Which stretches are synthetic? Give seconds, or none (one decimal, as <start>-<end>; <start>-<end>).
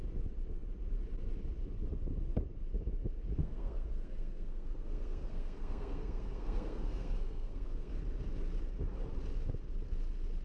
3.4-8.0